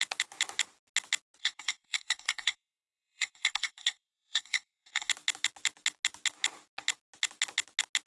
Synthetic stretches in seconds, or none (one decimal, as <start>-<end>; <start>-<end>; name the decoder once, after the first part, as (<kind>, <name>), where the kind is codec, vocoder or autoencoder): 1.4-5.1 (codec, SNAC)